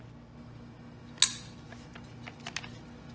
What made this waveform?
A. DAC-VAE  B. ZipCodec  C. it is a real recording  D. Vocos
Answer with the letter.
C